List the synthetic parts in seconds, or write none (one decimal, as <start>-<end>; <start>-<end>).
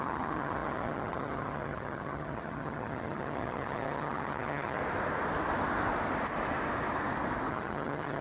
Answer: 0.0-4.8; 7.5-8.2